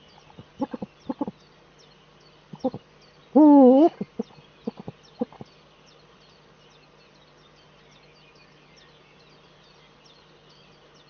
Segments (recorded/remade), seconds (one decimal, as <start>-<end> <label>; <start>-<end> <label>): 0.0-11.1 recorded